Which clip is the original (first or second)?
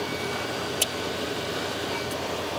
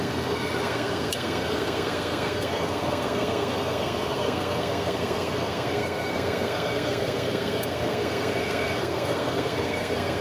first